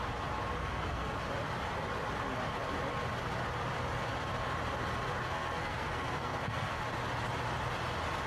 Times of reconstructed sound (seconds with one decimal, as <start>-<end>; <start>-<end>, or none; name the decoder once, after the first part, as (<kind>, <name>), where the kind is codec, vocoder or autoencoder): 0.6-1.2 (codec, SNAC); 5.2-6.8